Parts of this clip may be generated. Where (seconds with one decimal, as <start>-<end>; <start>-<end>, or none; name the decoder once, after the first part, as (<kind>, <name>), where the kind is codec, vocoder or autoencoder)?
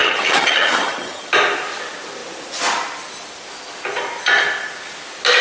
0.0-1.3 (vocoder, HiFi-GAN)